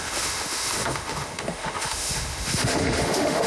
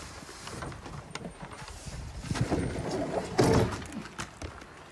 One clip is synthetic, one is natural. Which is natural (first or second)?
second